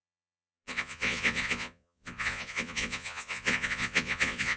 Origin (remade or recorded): remade